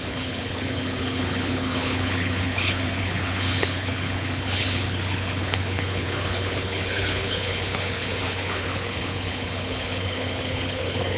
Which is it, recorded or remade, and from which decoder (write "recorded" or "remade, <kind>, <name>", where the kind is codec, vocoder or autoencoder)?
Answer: remade, codec, HILCodec